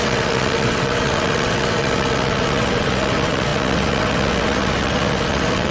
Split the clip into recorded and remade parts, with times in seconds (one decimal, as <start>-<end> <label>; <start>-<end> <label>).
0.0-5.7 remade